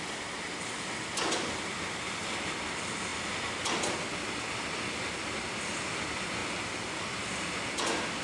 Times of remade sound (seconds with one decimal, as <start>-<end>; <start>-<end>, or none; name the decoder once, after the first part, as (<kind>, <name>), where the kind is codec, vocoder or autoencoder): none